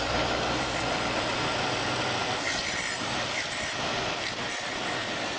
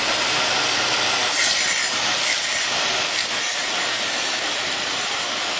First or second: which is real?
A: second